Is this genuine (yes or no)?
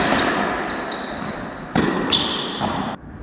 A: no